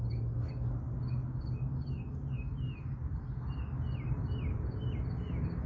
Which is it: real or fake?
real